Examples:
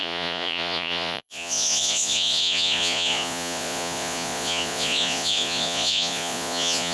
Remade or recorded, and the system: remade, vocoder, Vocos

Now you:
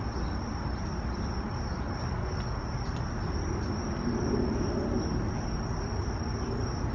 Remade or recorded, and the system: recorded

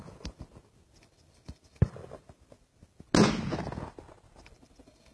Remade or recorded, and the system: recorded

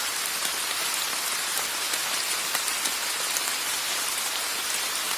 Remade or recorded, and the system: remade, vocoder, BigVGAN v2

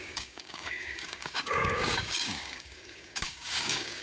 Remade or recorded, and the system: remade, codec, DAC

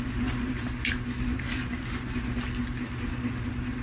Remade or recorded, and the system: recorded